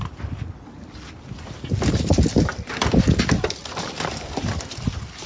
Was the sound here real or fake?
real